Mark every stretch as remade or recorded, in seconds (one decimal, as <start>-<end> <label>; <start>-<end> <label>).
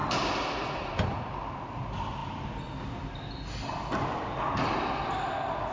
0.0-5.7 recorded